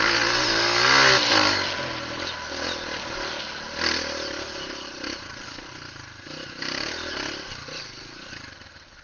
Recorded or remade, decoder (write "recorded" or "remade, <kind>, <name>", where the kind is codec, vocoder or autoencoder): recorded